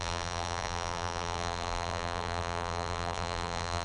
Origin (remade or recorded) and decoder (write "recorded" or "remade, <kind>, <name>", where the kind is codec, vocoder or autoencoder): remade, vocoder, BigVGAN v2